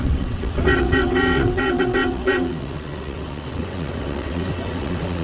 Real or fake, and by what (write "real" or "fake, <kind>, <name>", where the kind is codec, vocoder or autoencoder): fake, vocoder, WaveNeXt